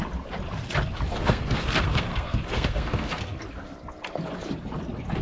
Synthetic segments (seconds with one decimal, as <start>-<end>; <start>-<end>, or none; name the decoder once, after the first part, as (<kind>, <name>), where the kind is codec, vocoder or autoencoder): 1.1-3.4 (codec, SNAC)